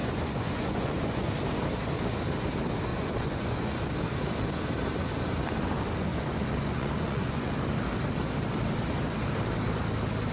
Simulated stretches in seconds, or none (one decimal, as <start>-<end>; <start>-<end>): 0.0-1.3; 2.9-3.9; 6.1-7.5